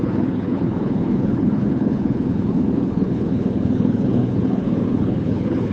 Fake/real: fake